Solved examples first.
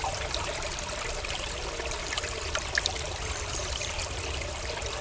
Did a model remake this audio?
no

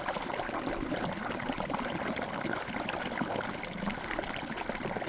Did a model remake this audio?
no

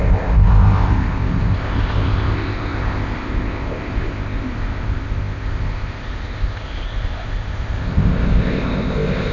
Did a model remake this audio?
yes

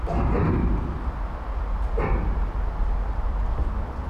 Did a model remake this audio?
no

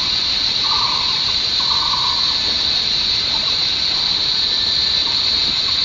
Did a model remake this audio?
no